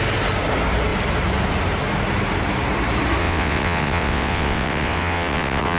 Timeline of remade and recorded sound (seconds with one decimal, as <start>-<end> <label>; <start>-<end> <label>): 0.0-3.2 recorded; 3.2-5.8 remade